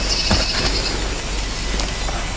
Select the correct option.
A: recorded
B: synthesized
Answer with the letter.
A